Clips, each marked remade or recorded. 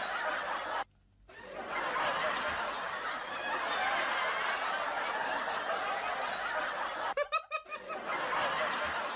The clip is recorded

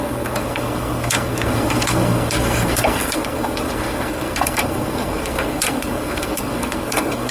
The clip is remade